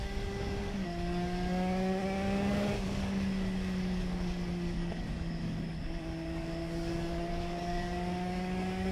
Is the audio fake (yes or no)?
yes